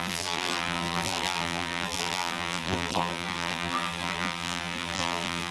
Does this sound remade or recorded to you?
remade